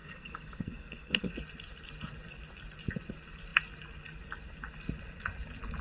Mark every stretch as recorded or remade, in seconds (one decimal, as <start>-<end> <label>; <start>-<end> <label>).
0.0-1.3 remade; 1.3-5.8 recorded